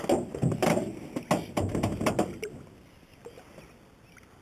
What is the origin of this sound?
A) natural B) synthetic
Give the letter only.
A